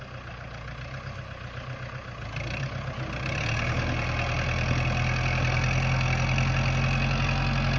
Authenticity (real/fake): real